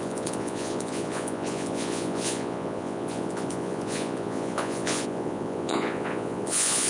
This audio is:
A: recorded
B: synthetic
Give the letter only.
B